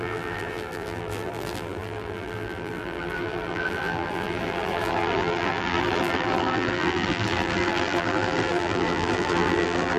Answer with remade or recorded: remade